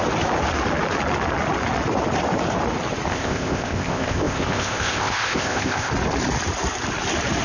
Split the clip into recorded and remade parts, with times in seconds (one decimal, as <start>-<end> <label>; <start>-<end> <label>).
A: 0.0-3.1 recorded; 3.1-5.9 remade; 5.9-7.4 recorded